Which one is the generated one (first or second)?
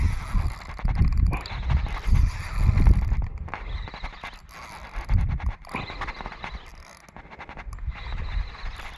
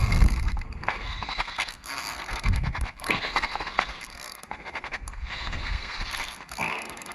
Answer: second